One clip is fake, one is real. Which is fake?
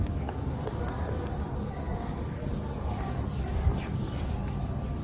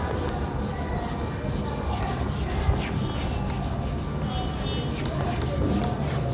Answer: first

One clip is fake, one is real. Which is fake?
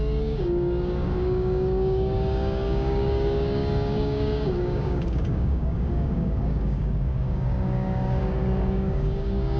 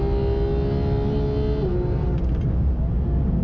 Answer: first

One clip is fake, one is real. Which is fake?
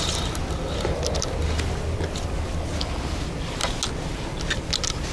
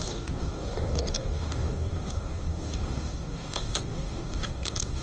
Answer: second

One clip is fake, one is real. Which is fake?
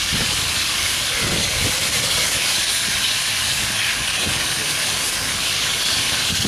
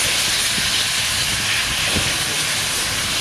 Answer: first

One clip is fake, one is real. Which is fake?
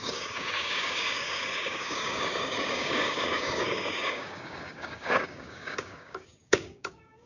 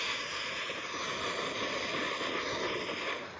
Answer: first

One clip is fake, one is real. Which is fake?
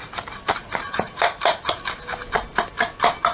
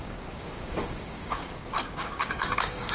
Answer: second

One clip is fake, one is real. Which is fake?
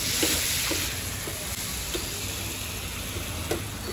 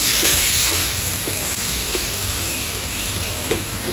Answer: second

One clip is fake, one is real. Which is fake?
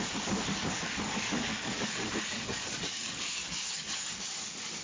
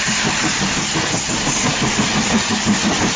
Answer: first